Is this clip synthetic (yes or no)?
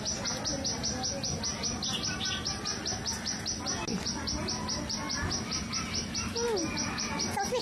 no